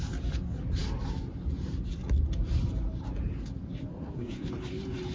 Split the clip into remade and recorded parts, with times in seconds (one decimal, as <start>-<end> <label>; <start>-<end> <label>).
0.0-3.9 recorded; 3.9-4.5 remade; 4.5-5.1 recorded